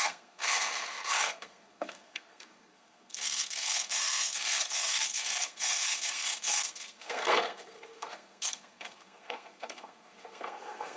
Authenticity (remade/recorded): remade